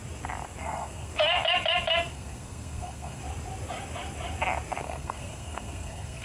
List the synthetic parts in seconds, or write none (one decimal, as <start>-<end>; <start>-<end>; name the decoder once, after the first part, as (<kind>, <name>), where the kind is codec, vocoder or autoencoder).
0.6-1.1 (codec, SNAC); 2.1-3.2; 4.8-6.2